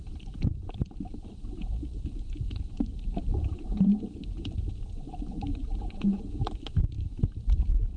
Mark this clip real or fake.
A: fake